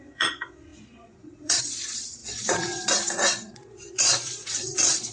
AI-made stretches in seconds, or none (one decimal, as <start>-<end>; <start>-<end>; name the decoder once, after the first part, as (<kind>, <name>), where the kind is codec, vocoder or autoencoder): 0.0-5.1 (vocoder, Vocos)